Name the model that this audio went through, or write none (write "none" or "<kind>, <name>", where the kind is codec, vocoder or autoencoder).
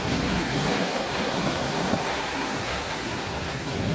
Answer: codec, SNAC